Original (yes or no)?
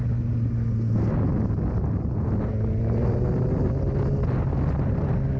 yes